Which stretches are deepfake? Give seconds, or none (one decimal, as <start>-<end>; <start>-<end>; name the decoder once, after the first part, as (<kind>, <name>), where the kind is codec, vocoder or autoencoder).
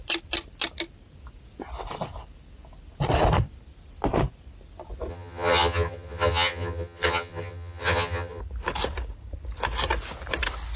5.1-8.4 (vocoder, HiFi-GAN)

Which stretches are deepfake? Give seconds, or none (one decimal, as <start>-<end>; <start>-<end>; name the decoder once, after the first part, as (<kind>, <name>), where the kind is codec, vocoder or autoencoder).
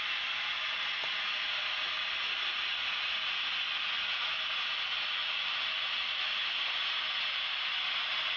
none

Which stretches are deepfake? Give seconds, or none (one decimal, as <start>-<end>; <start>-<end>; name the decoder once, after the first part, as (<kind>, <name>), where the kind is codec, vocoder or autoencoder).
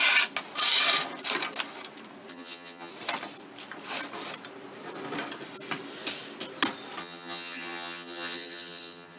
2.3-2.9 (vocoder, HiFi-GAN); 7.0-9.2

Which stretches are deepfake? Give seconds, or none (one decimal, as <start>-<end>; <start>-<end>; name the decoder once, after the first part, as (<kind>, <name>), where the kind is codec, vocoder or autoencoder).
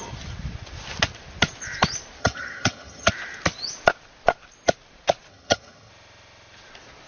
2.2-3.1 (vocoder, HiFi-GAN); 5.3-5.9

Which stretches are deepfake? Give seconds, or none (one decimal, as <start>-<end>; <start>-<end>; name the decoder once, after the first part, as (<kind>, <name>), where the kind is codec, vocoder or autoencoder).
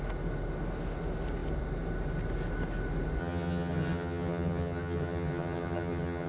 3.2-6.3 (vocoder, HiFi-GAN)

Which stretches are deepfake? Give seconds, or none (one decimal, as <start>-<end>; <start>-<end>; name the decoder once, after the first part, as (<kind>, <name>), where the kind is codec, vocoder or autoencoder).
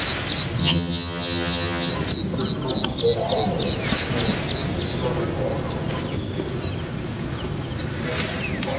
0.6-1.9 (vocoder, HiFi-GAN)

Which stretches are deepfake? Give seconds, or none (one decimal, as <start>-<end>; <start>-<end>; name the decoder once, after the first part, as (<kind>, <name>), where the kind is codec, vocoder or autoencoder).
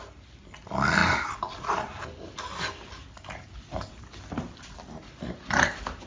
none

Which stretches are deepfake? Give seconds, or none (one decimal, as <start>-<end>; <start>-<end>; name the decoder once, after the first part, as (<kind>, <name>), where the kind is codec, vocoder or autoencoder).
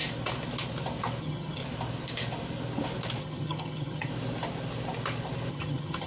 1.2-1.6 (vocoder, HiFi-GAN); 3.2-4.1; 5.5-6.1